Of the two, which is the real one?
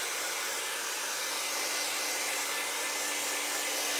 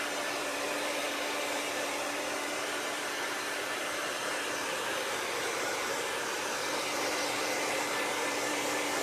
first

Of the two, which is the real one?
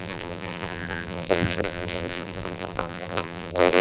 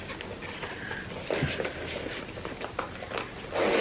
second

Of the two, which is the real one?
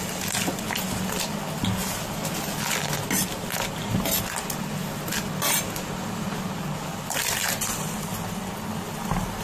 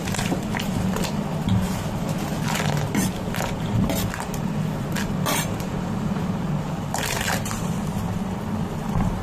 first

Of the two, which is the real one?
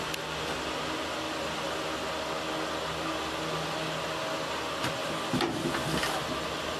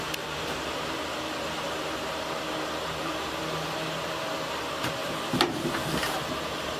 first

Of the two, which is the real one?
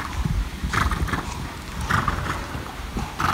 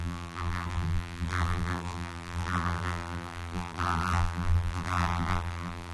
first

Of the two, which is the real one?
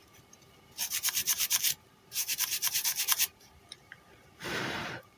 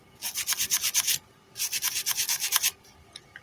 second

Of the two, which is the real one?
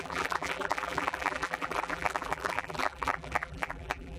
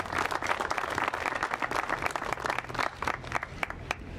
second